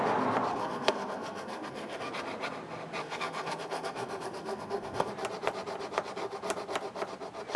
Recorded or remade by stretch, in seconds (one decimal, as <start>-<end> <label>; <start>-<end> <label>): 0.0-0.5 recorded; 0.5-2.1 remade; 2.1-3.0 recorded; 3.0-5.1 remade; 5.1-7.6 recorded